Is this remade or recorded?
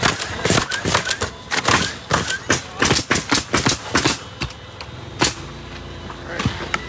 recorded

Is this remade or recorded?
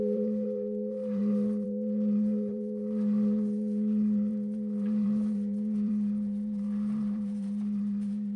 remade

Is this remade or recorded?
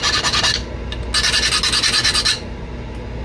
recorded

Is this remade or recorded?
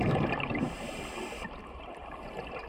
remade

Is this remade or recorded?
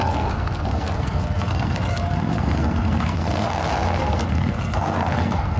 remade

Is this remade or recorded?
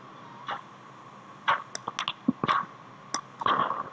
recorded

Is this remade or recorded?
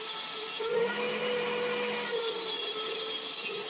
recorded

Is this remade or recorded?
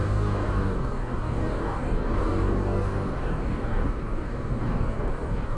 remade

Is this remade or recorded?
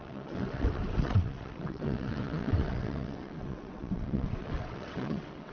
remade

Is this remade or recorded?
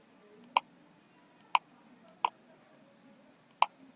recorded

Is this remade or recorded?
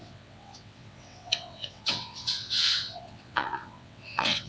remade